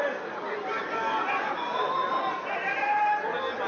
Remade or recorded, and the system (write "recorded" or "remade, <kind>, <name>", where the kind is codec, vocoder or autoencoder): recorded